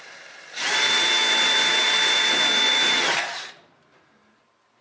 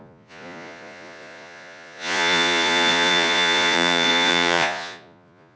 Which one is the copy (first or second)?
second